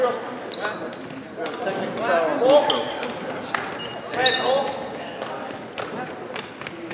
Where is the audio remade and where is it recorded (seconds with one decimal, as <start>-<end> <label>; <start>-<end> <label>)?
0.0-6.9 recorded